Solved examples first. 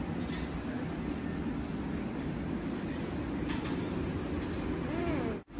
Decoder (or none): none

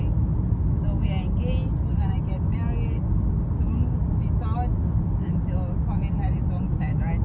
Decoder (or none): none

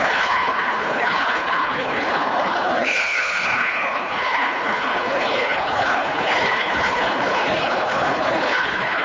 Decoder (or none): codec, HILCodec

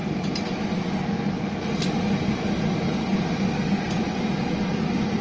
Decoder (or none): none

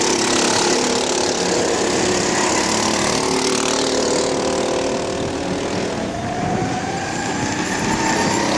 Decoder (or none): none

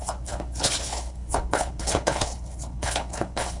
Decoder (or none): codec, HILCodec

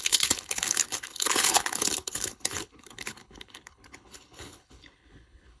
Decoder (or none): codec, HILCodec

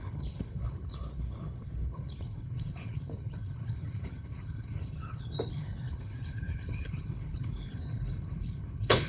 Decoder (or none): codec, HILCodec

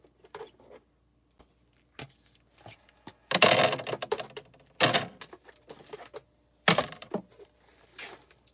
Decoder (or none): none